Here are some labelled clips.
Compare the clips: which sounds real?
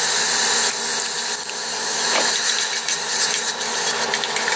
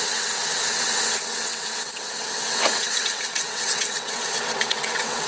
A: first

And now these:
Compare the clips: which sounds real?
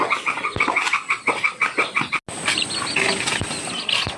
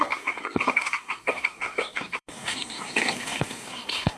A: first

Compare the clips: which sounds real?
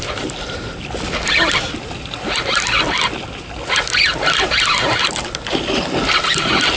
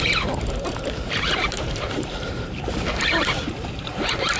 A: first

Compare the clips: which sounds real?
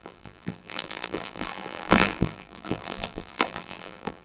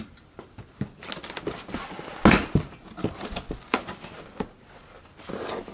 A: second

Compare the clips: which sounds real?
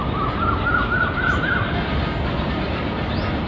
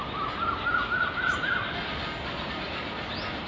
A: second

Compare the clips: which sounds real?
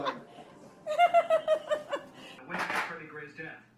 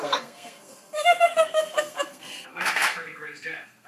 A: first